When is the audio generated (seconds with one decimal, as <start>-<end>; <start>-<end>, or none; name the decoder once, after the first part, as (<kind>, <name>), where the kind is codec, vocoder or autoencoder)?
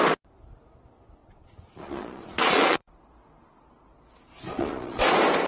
1.2-3.1 (vocoder, Vocos); 4.3-5.0